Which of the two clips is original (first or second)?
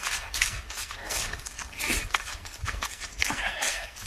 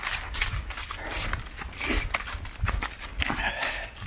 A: second